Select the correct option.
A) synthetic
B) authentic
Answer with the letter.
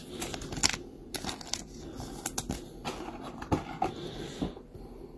B